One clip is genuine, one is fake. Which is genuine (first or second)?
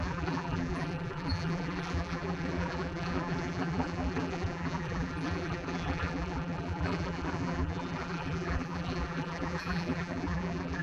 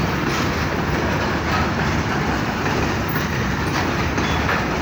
second